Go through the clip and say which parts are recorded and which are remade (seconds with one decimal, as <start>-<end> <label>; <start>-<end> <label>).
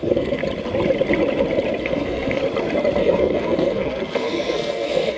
0.0-0.4 remade; 0.4-1.8 recorded; 1.8-2.4 remade; 2.4-3.0 recorded; 3.0-5.2 remade